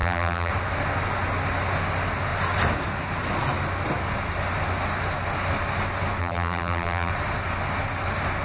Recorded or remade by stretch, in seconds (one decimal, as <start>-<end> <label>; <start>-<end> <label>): 0.0-0.5 remade; 0.5-6.2 recorded; 6.2-7.1 remade; 7.1-8.4 recorded